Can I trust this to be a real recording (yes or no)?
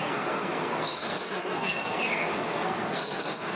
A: no